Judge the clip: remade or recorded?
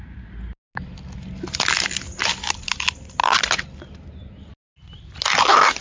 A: recorded